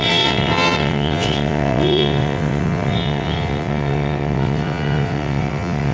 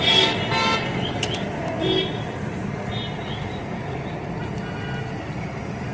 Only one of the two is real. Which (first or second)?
second